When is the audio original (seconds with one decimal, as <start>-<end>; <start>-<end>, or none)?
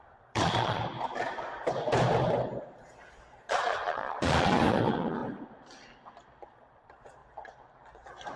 0.8-3.4; 5.2-6.5; 7.2-8.4